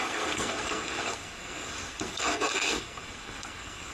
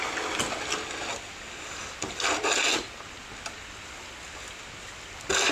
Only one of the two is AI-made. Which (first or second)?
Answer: first